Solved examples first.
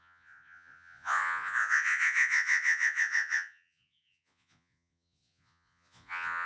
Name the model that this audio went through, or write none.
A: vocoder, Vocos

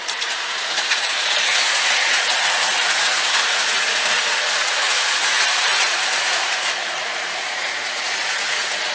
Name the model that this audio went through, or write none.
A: vocoder, Vocos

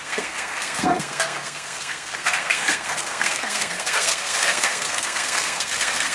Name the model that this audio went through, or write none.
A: codec, SNAC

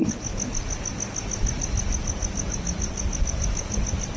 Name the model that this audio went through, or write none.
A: none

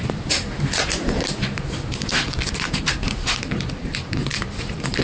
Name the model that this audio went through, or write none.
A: vocoder, BigVGAN v2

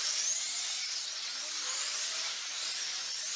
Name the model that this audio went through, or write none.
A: none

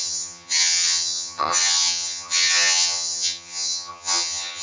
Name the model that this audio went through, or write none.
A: vocoder, HiFi-GAN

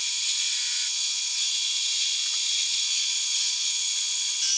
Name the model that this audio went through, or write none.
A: vocoder, Vocos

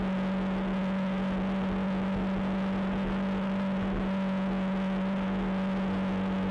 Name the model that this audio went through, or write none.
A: none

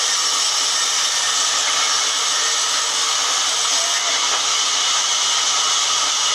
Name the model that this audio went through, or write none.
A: none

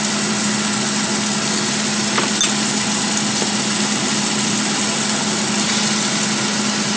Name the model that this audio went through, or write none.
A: none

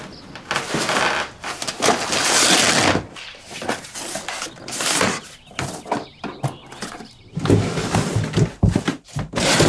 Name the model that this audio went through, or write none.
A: none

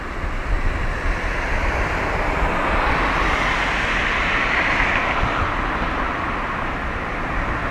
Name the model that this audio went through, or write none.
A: none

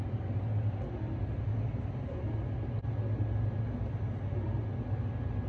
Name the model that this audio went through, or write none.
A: none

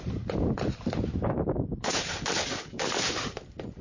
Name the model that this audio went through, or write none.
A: vocoder, BigVGAN v2